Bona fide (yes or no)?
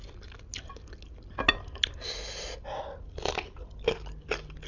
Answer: yes